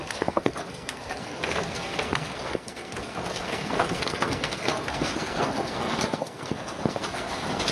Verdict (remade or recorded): remade